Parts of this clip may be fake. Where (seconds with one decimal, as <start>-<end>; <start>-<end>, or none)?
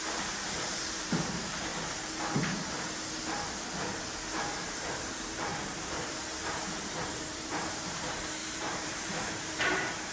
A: 0.0-1.7; 4.6-10.1